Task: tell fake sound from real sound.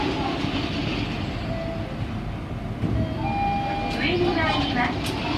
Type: real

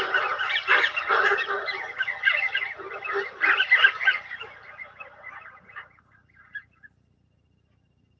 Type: real